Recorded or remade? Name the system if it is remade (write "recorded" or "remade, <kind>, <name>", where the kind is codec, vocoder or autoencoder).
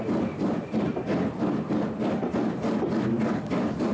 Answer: recorded